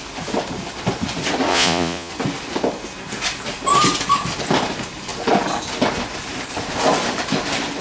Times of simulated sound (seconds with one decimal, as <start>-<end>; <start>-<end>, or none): 1.5-2.1